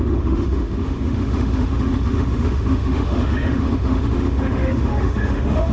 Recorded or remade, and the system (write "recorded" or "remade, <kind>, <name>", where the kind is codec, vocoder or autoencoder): remade, autoencoder, DAC-VAE